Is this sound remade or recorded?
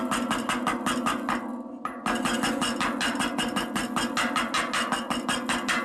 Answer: recorded